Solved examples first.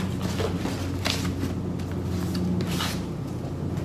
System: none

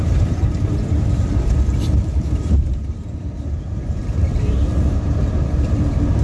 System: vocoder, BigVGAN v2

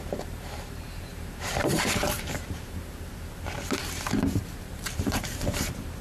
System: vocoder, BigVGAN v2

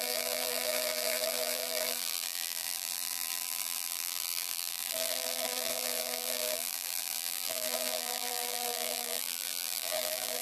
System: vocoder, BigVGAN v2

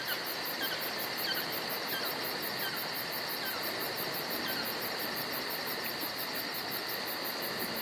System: none